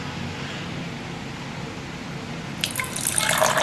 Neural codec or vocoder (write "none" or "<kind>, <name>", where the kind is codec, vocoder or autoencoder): none